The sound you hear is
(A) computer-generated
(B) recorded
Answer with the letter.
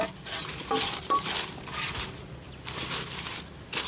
B